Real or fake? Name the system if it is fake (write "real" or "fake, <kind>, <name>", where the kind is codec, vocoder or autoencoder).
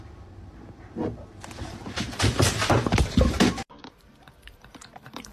fake, vocoder, BigVGAN v2